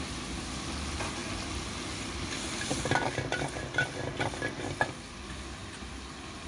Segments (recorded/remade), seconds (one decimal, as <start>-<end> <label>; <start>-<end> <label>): 0.0-6.5 recorded